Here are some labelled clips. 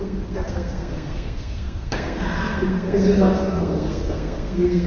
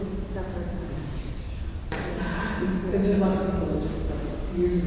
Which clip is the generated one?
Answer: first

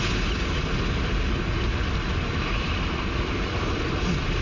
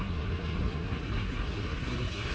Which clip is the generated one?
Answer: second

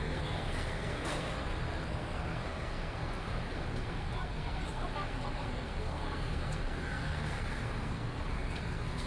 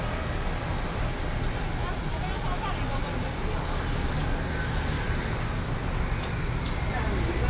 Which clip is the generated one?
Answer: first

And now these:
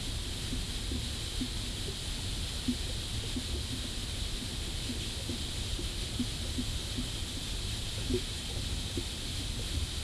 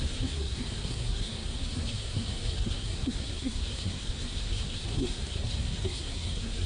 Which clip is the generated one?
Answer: second